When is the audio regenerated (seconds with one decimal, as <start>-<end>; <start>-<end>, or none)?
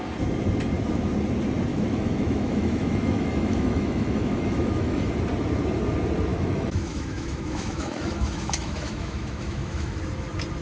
1.7-5.1; 6.3-10.0